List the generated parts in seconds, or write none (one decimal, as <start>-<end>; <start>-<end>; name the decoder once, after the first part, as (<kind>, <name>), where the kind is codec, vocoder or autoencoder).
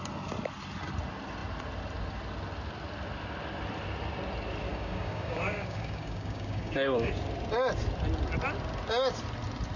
4.7-7.1 (codec, DAC)